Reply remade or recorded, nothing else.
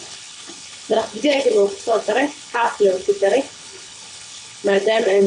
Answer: remade